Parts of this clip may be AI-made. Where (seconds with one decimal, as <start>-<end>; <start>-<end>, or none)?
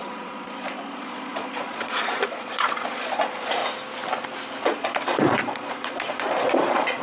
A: 0.0-3.6; 4.6-7.0